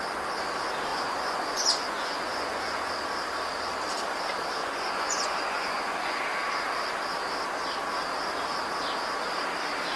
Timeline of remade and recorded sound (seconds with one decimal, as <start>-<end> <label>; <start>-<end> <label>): 0.0-0.9 recorded; 0.9-2.9 remade; 2.9-4.6 recorded; 4.6-6.2 remade; 6.2-10.0 recorded